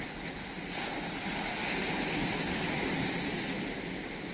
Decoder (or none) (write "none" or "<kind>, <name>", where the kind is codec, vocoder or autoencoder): none